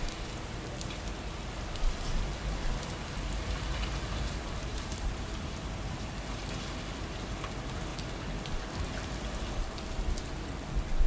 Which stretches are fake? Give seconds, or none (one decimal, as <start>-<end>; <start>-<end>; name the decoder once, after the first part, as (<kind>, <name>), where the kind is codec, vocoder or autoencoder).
4.7-6.4 (vocoder, BigVGAN v2)